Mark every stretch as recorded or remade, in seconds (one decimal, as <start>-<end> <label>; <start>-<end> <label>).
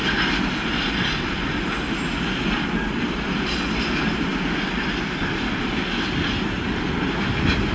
0.0-7.7 recorded